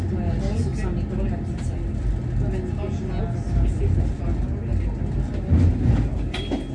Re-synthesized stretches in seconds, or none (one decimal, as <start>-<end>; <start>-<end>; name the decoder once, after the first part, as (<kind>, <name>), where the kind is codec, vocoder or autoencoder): none